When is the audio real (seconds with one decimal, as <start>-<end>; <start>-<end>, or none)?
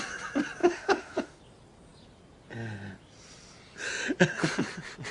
0.0-0.6; 1.4-5.1